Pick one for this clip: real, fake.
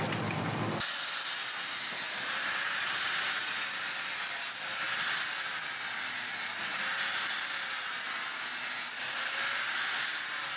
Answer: real